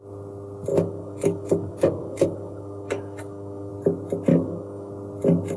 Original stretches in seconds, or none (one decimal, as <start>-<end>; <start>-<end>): 0.0-0.7; 3.7-4.3; 4.9-5.6